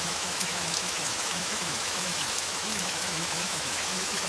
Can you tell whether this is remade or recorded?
remade